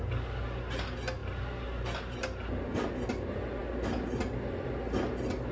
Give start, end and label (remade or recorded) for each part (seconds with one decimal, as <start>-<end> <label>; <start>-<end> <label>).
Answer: 0.0-5.5 recorded